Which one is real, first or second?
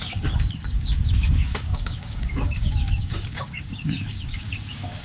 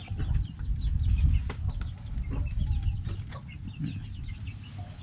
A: second